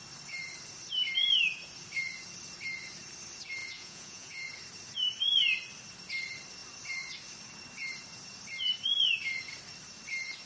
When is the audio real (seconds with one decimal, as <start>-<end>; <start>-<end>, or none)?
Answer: 0.0-3.6; 4.5-10.5